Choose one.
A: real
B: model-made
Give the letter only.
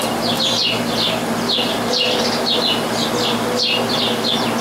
A